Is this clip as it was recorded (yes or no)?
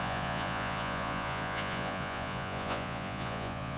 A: no